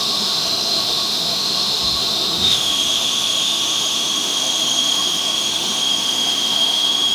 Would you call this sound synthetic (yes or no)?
yes